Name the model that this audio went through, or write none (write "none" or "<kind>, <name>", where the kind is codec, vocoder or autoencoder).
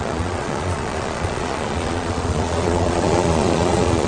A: vocoder, Vocos